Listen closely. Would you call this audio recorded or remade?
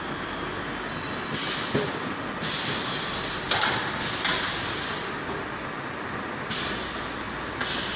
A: recorded